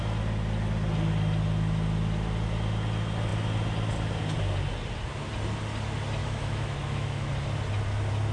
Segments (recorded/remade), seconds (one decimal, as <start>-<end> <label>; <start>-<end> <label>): 0.0-6.2 recorded; 6.2-7.3 remade; 7.3-8.3 recorded